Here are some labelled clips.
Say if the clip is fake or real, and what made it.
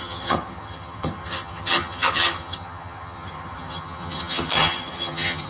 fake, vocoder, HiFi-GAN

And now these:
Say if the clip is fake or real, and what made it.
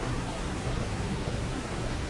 fake, codec, SNAC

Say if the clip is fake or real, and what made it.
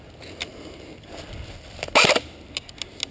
real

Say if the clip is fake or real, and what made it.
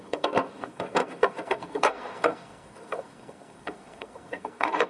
fake, codec, SNAC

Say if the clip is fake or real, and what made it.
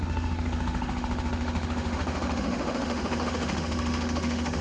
fake, autoencoder, DAC-VAE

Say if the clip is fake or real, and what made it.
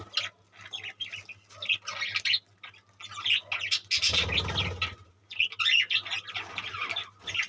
real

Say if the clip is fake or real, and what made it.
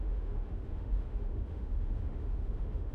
fake, autoencoder, DAC-VAE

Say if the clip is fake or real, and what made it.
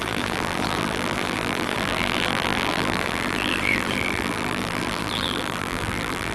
fake, vocoder, BigVGAN v2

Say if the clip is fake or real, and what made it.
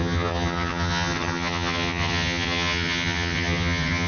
fake, vocoder, HiFi-GAN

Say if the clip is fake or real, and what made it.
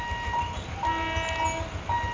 real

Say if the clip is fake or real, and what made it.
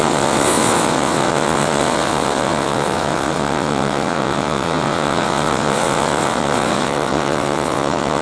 fake, vocoder, WaveNeXt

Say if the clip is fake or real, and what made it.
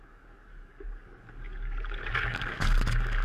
fake, codec, DAC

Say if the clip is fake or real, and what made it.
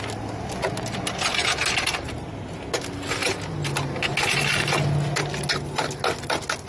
real